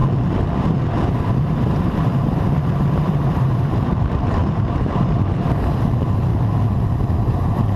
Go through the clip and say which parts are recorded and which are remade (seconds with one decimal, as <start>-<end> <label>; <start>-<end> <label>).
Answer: 0.0-0.6 recorded; 0.6-2.1 remade; 2.1-2.9 recorded; 2.9-6.3 remade; 6.3-7.3 recorded; 7.3-7.8 remade